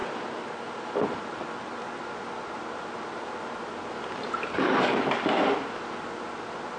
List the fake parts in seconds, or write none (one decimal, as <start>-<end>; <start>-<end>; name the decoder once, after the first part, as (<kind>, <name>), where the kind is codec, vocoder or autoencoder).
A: none